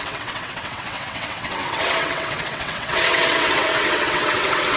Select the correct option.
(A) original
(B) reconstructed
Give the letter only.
B